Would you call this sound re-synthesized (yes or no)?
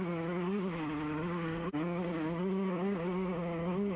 yes